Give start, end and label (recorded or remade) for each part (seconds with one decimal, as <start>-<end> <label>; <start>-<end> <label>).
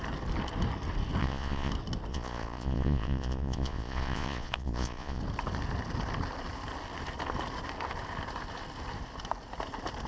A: 0.0-1.2 recorded; 1.2-1.7 remade; 1.7-2.1 recorded; 2.1-5.2 remade; 5.2-10.1 recorded